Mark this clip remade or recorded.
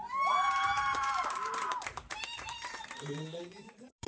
remade